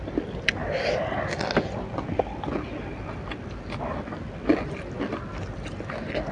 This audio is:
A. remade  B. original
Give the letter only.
B